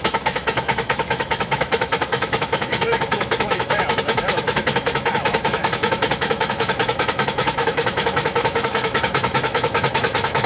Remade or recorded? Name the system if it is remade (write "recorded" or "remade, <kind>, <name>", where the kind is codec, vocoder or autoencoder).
remade, autoencoder, DAC-VAE